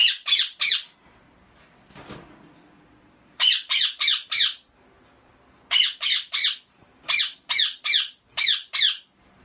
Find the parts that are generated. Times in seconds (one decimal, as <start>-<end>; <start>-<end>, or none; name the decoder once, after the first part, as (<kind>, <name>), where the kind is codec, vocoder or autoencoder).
none